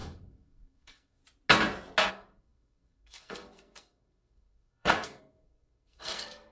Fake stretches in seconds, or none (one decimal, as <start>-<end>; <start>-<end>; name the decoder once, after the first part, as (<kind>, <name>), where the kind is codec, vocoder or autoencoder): 0.0-1.2 (codec, SNAC); 2.1-6.5